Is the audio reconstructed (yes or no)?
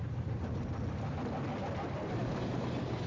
no